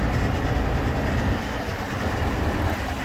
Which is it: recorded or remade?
recorded